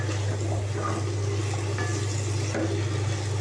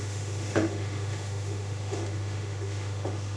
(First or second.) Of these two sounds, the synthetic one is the second